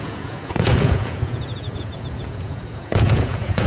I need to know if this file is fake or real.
fake